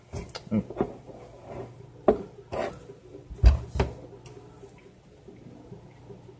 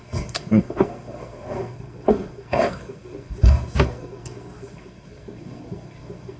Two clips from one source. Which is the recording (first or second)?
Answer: first